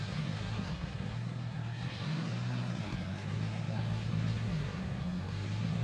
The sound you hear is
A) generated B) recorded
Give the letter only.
A